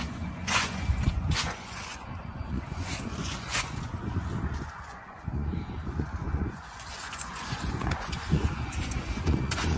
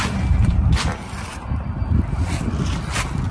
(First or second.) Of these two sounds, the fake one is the first